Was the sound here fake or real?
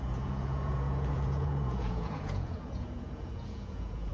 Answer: fake